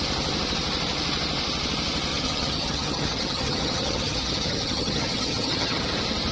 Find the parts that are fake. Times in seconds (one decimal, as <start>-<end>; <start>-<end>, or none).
2.1-5.8